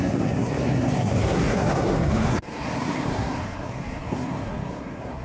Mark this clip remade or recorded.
remade